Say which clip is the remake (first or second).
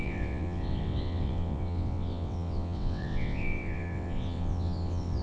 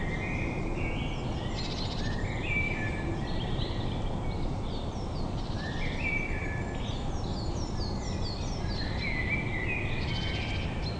first